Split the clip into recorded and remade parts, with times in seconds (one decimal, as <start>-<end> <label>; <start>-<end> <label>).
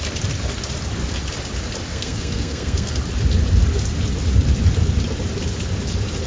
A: 0.0-1.9 recorded; 1.9-3.0 remade; 3.0-6.3 recorded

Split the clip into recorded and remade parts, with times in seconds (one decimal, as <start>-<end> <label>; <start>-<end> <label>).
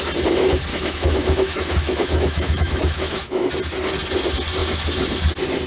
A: 0.0-0.7 recorded; 0.7-3.5 remade; 3.5-5.7 recorded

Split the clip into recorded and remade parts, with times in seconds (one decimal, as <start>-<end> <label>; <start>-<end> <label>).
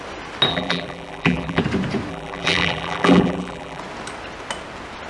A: 0.0-0.5 recorded; 0.5-1.6 remade; 1.6-2.1 recorded; 2.1-3.8 remade; 3.8-5.1 recorded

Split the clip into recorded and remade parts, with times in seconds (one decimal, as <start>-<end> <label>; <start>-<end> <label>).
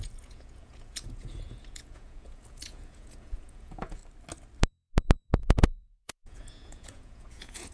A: 0.0-4.0 remade; 4.0-5.3 recorded; 5.3-7.7 remade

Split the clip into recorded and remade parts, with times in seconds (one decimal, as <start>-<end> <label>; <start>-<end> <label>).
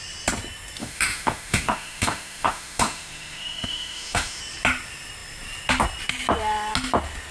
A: 0.0-0.8 recorded; 0.8-4.4 remade; 4.4-7.3 recorded